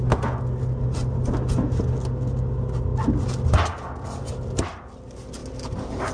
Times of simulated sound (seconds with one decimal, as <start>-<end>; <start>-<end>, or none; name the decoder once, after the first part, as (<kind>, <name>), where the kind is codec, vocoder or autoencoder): none